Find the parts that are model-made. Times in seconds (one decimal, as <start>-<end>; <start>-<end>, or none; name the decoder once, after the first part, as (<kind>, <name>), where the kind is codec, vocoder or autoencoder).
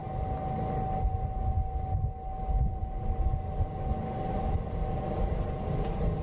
none